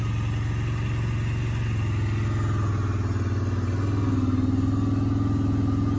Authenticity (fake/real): real